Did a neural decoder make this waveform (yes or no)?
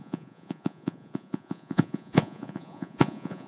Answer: yes